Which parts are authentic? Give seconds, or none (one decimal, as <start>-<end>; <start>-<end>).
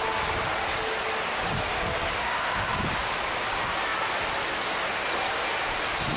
0.0-2.2; 2.7-6.2